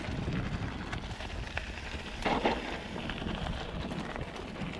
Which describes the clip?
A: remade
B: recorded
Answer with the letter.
B